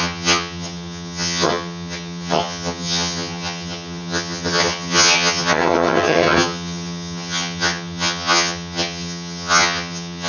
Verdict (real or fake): fake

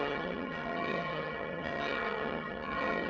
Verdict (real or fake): fake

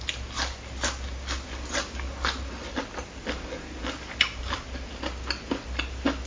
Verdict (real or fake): real